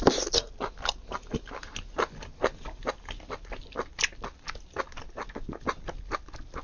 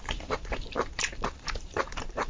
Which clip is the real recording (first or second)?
first